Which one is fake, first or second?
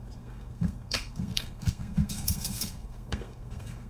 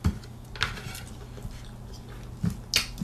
first